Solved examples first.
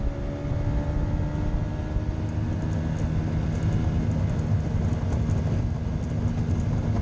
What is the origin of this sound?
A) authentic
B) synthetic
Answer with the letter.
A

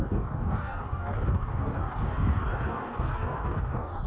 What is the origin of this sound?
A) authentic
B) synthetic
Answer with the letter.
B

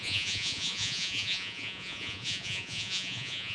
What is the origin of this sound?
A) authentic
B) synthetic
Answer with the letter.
B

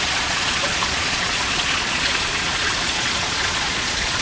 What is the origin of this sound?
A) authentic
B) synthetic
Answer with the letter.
B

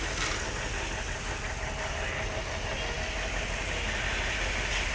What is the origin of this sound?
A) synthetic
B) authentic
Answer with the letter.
B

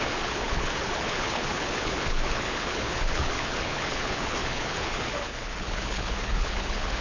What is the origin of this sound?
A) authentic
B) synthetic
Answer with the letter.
B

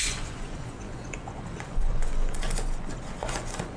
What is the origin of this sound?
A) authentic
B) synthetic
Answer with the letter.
B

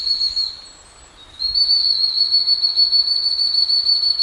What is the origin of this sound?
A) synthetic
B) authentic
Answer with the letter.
B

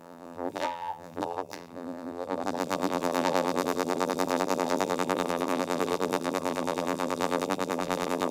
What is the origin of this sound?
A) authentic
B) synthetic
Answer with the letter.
B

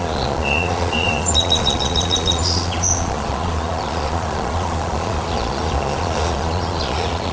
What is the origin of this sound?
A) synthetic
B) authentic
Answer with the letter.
A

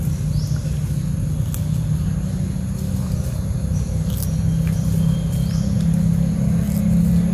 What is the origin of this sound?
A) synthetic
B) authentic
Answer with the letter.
B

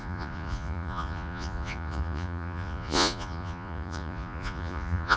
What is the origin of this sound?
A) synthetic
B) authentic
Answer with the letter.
A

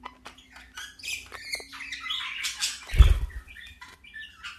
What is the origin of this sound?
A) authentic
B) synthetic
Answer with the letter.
A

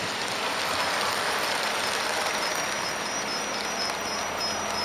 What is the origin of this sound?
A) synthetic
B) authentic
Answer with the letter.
B